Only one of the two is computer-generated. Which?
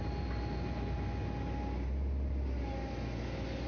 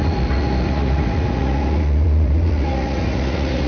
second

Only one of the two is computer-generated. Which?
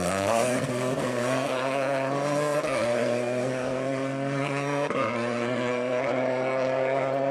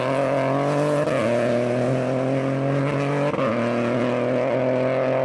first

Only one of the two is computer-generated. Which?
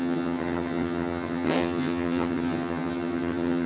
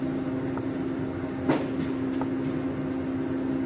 first